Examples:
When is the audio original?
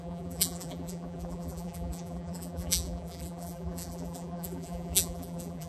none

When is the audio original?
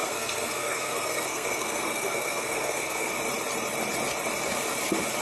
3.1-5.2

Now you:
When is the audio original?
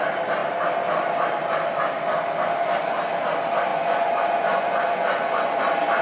0.0-3.7; 5.5-6.0